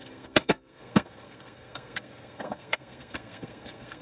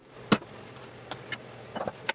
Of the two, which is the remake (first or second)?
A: first